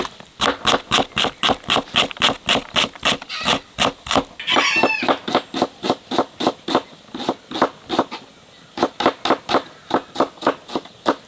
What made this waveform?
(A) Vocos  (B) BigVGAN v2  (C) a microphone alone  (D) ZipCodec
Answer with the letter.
C